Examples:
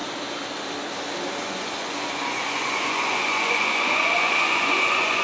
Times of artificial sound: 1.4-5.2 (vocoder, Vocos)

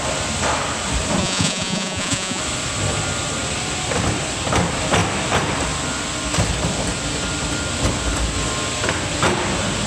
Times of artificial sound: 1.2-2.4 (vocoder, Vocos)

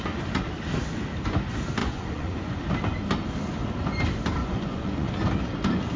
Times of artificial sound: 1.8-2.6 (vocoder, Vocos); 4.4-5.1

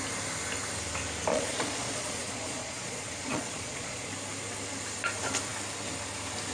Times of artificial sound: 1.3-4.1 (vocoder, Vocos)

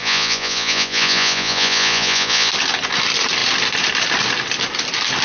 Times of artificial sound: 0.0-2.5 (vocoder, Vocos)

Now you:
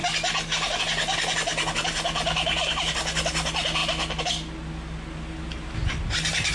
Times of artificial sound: none

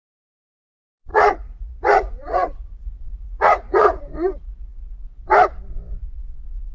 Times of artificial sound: 1.1-4.0 (vocoder, Vocos)

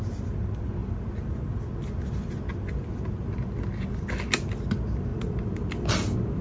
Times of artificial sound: none